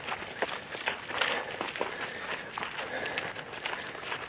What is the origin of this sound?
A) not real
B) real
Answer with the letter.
B